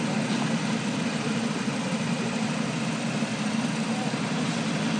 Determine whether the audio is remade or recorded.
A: recorded